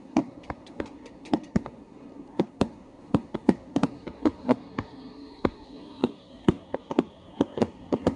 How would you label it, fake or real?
fake